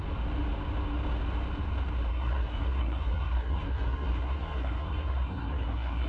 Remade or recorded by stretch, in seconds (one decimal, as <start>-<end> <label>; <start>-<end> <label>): 0.0-2.1 recorded; 2.1-6.1 remade